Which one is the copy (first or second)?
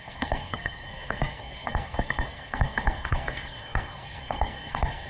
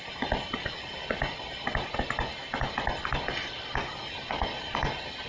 first